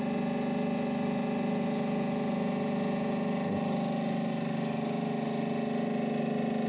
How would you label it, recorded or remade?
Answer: recorded